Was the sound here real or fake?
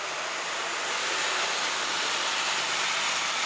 real